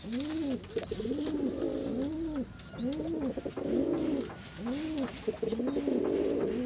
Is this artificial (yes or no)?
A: no